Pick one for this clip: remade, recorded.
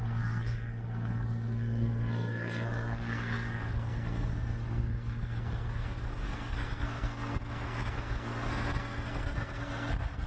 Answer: remade